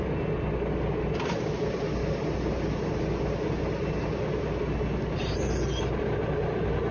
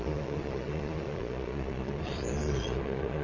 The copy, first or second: second